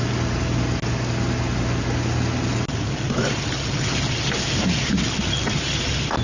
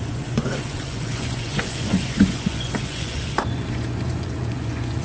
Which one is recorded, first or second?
first